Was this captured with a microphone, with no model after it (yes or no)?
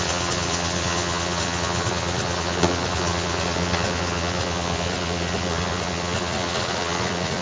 no